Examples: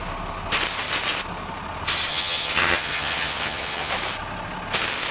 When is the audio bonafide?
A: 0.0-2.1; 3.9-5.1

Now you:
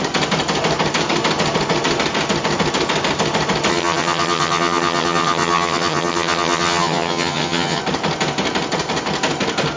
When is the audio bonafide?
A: 0.0-3.7; 7.8-9.8

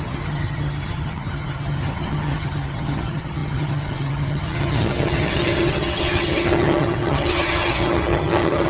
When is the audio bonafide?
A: none

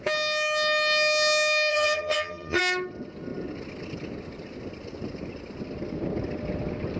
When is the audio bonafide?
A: 0.0-1.7; 2.6-7.0

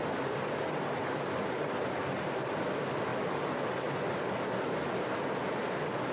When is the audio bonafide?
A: 0.0-6.1